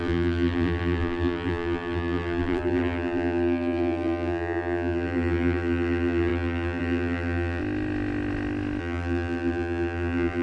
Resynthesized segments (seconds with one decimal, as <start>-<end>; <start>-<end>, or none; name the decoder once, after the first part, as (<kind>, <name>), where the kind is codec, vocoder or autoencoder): 0.0-7.6 (vocoder, BigVGAN v2); 8.8-10.4